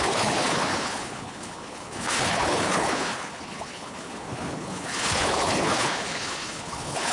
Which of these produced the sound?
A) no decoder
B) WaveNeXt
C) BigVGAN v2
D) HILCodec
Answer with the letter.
D